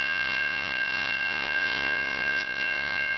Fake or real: fake